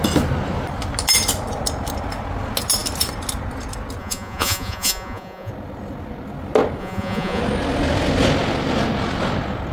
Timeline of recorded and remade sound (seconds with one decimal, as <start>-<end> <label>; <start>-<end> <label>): 0.0-4.0 recorded; 4.0-5.5 remade; 5.5-6.8 recorded; 6.8-7.4 remade; 7.4-9.7 recorded